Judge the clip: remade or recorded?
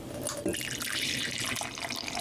recorded